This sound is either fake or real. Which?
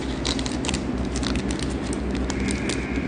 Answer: real